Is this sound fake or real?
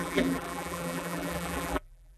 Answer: fake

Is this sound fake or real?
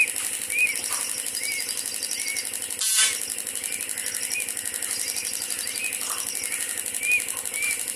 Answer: real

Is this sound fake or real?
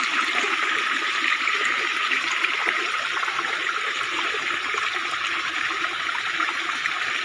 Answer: fake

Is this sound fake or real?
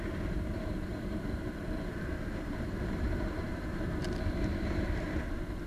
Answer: fake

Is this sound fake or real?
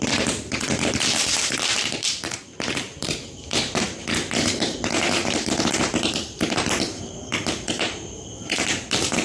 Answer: fake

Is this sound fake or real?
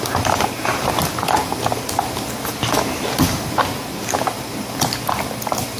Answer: real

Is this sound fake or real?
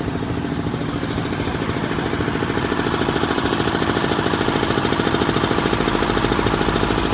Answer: fake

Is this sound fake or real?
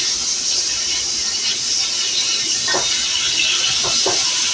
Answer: real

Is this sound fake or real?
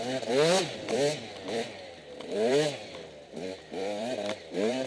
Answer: fake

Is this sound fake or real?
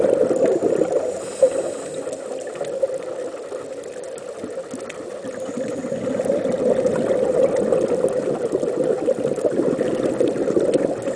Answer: real